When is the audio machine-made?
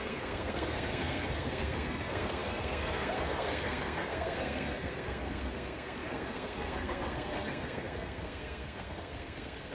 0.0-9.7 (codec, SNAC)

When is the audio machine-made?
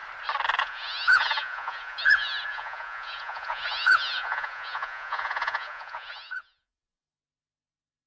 0.6-8.1 (vocoder, Vocos)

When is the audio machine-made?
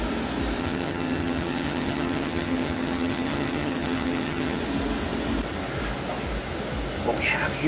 0.6-4.6 (vocoder, HiFi-GAN)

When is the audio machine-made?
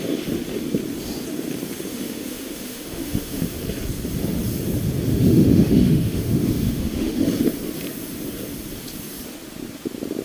1.9-3.6 (autoencoder, DAC-VAE); 5.1-7.2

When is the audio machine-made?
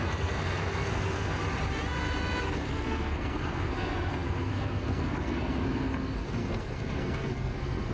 0.0-1.4 (codec, SNAC); 2.4-7.9